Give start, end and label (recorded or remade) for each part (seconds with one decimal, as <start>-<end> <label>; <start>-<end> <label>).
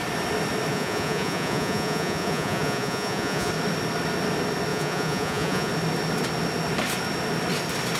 0.0-0.7 recorded; 0.7-3.5 remade; 3.5-4.7 recorded; 4.7-5.7 remade; 5.7-8.0 recorded